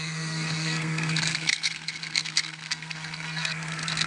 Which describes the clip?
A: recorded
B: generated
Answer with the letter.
B